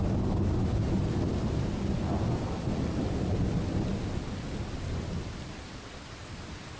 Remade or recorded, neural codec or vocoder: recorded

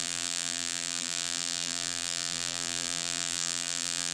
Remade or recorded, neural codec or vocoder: remade, vocoder, BigVGAN v2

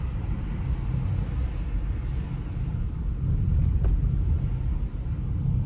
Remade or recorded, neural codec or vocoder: recorded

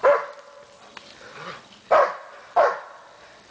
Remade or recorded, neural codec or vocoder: recorded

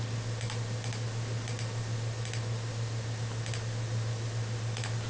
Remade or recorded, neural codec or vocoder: recorded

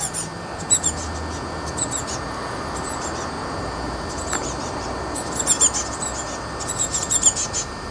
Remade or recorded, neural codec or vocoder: recorded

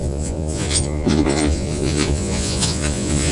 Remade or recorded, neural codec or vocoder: remade, vocoder, Vocos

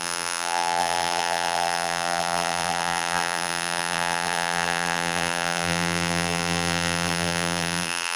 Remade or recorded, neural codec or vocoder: remade, vocoder, BigVGAN v2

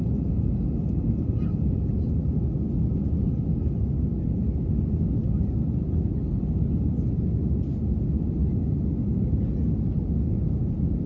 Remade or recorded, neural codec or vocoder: recorded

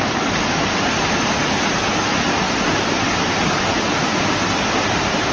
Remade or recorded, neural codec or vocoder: recorded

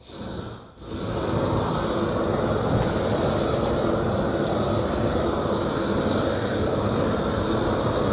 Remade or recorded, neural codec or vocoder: recorded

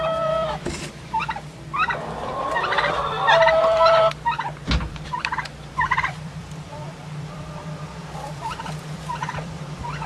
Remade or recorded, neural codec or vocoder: remade, vocoder, BigVGAN v2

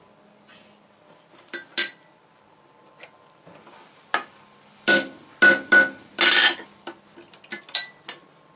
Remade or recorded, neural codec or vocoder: recorded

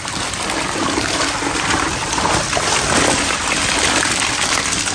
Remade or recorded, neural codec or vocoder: recorded